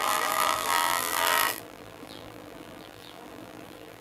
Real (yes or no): no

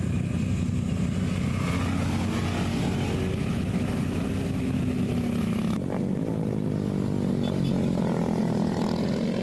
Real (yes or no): yes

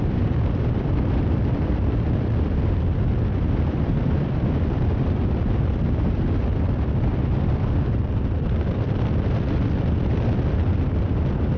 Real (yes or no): no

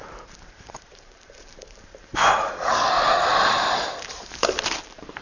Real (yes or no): no